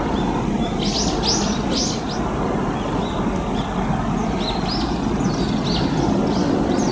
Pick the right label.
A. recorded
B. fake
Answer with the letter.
A